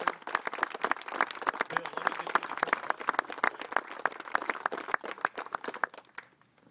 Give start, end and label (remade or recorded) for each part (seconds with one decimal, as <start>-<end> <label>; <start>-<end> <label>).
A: 0.0-4.4 recorded; 4.4-5.9 remade; 5.9-6.7 recorded